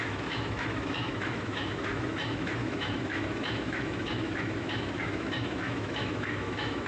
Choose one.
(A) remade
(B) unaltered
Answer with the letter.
A